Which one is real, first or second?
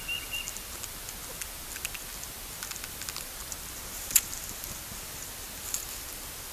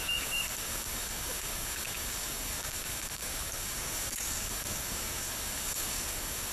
first